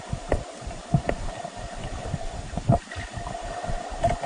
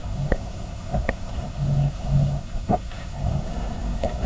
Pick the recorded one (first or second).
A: first